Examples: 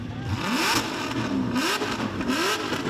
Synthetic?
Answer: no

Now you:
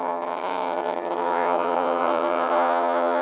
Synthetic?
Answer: yes